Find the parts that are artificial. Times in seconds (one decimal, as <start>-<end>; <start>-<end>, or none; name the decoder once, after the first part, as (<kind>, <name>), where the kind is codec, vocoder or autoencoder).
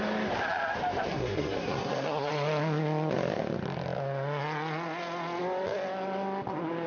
1.1-2.3 (codec, SNAC)